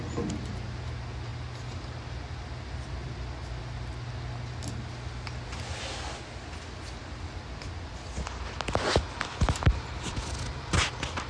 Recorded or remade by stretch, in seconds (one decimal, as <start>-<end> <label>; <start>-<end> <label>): 0.0-11.3 recorded